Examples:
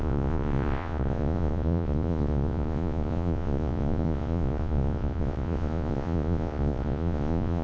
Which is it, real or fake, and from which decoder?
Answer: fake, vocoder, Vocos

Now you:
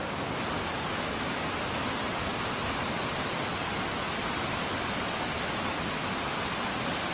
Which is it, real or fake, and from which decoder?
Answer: real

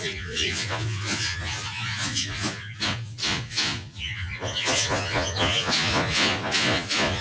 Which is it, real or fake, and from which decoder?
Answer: fake, vocoder, Vocos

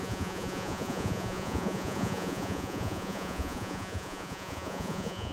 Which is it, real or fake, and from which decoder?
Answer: fake, vocoder, Vocos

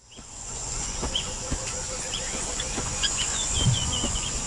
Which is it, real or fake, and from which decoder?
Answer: fake, vocoder, Vocos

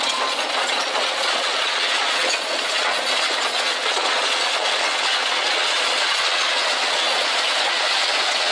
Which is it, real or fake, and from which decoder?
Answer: fake, vocoder, Vocos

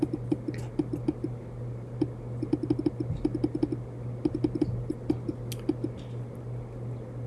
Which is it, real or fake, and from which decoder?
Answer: real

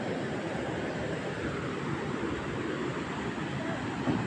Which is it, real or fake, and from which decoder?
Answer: real